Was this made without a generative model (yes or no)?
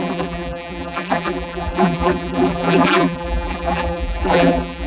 no